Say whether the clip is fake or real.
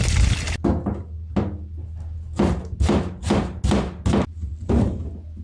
real